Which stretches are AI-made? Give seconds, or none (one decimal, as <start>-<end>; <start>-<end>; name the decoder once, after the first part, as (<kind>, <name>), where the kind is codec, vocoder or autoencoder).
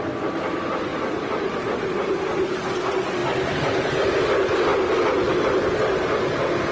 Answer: none